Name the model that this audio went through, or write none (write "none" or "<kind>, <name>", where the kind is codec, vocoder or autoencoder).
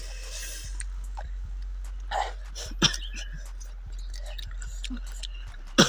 none